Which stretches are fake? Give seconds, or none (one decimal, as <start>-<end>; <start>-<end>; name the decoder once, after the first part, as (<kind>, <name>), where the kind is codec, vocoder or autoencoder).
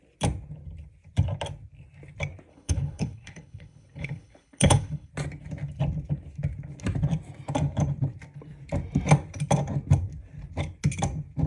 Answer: 2.5-5.1 (codec, HILCodec)